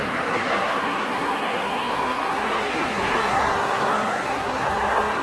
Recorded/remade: remade